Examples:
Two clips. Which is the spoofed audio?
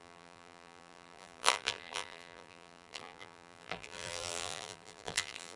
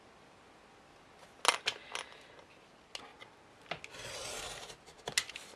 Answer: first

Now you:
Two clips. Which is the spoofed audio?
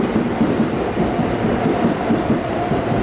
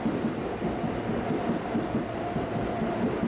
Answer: first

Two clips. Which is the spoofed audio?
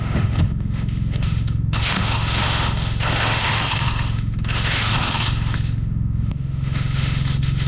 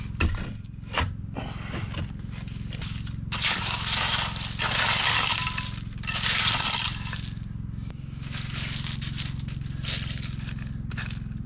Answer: first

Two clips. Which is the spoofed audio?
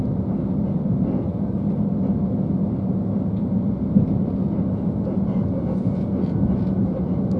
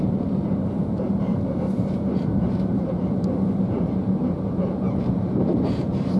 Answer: second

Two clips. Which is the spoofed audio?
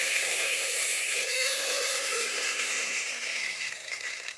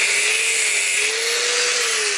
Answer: first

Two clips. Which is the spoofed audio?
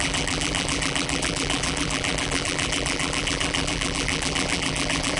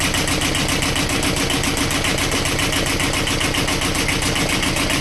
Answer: first